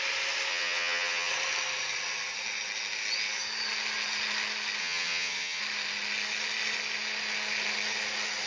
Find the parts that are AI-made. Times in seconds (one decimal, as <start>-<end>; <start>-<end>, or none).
0.5-1.3; 4.8-5.6